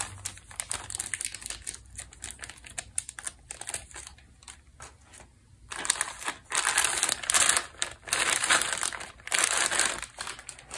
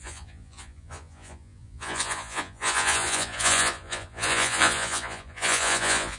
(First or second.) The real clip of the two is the first